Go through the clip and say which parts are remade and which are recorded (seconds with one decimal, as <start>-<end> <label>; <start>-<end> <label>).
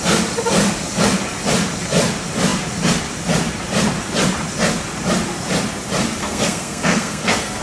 0.0-6.2 recorded; 6.2-7.6 remade